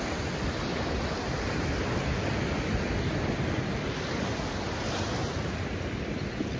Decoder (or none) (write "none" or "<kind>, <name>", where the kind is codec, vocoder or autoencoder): none